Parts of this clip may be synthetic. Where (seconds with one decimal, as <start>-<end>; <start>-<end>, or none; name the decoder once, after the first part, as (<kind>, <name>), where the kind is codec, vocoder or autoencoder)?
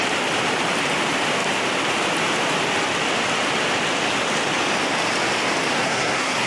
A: 5.7-6.5 (codec, SNAC)